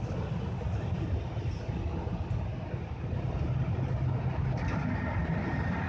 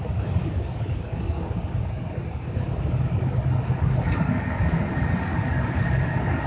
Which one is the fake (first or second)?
second